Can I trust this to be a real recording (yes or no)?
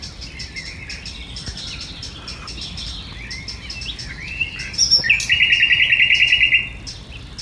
yes